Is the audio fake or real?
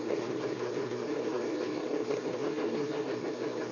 fake